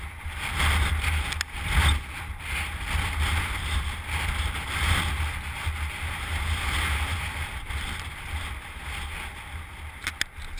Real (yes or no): yes